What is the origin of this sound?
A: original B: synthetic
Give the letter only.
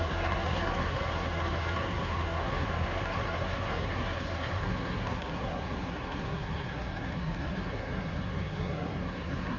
B